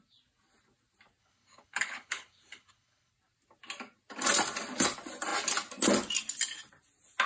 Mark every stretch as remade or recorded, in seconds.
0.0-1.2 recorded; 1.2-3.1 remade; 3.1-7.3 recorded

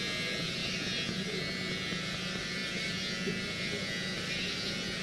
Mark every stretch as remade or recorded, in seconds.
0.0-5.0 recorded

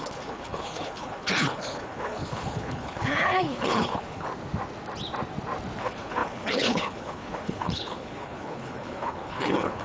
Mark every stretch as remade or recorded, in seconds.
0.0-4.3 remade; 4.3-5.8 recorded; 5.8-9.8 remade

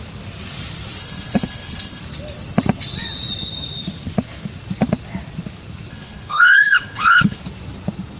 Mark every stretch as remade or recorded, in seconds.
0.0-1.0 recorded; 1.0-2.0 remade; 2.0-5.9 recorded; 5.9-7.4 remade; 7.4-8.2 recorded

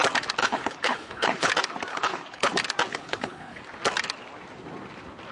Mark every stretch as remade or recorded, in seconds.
0.0-0.4 recorded; 0.4-1.5 remade; 1.5-1.9 recorded; 1.9-2.5 remade; 2.5-2.9 recorded; 2.9-3.6 remade; 3.6-5.3 recorded